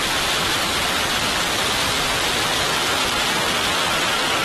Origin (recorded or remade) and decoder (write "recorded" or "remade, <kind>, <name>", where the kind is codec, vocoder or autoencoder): recorded